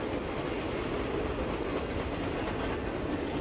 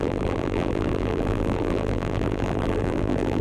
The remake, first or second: second